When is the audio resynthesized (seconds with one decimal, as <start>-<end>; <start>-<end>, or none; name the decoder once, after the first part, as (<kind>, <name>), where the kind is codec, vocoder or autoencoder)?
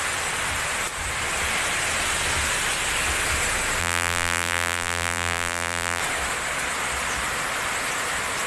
3.8-6.0 (vocoder, BigVGAN v2)